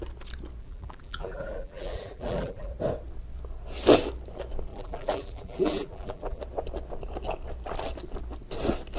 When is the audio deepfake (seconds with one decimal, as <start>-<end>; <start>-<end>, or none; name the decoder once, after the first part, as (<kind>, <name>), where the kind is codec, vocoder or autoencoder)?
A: 0.6-2.7 (vocoder, BigVGAN v2); 4.7-6.4